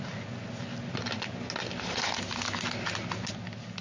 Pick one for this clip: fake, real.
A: real